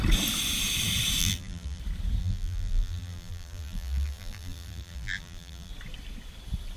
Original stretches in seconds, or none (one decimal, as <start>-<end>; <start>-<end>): 0.0-1.2; 1.8-2.2; 5.7-6.8